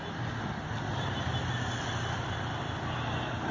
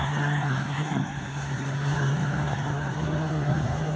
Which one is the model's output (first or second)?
second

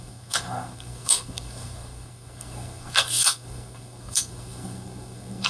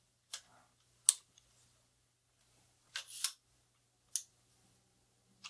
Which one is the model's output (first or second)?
first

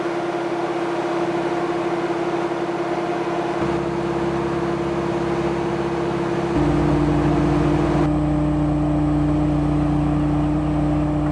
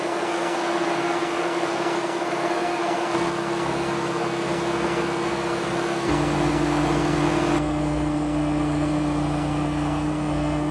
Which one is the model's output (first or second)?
second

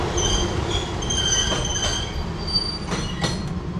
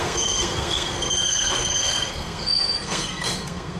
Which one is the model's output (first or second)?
second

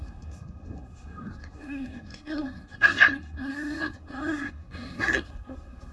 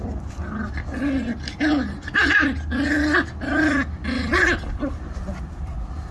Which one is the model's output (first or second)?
first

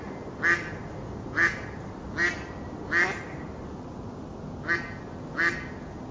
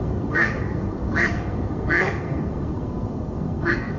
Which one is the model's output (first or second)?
second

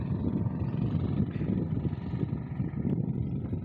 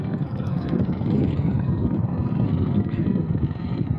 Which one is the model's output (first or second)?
second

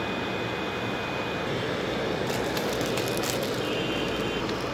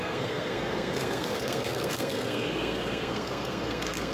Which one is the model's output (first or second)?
second